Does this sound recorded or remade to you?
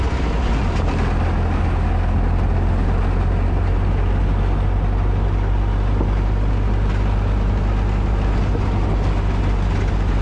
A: recorded